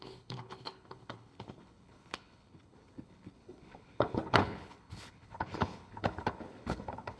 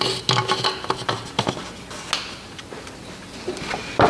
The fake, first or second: first